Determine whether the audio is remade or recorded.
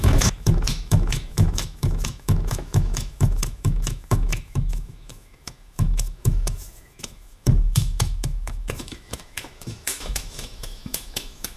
remade